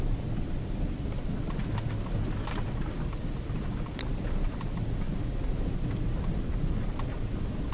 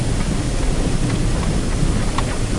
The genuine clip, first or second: first